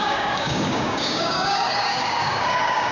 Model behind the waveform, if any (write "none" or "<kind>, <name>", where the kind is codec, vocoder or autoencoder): codec, DAC